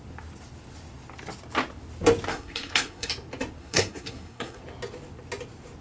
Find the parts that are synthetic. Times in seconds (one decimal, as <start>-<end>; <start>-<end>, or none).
2.3-3.1; 3.6-4.6